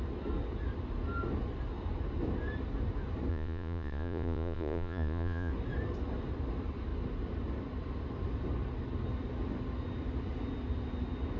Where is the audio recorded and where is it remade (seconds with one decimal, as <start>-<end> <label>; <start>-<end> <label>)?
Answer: 0.0-3.3 recorded; 3.3-5.5 remade; 5.5-11.4 recorded